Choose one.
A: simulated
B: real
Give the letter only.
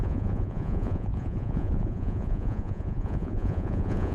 A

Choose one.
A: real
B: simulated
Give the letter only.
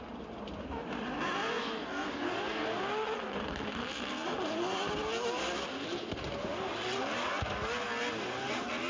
A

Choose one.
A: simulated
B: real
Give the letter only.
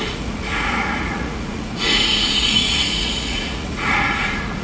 A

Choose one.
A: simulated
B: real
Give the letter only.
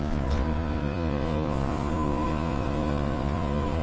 A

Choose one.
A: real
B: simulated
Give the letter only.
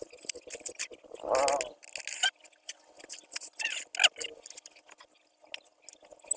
A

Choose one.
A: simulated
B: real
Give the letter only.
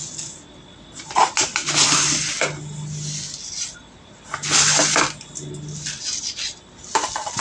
B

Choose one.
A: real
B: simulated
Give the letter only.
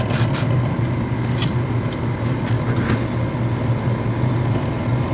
A